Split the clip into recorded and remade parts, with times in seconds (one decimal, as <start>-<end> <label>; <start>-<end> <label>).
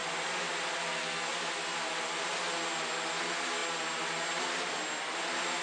0.0-5.6 recorded